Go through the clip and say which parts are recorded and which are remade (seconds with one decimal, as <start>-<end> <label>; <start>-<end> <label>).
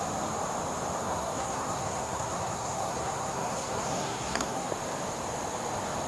0.0-1.0 recorded; 1.0-4.7 remade; 4.7-6.1 recorded